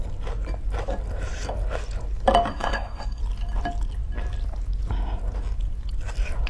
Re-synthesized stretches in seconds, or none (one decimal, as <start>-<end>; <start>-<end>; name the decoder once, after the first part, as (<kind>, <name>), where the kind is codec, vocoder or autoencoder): 2.5-3.2 (codec, SNAC)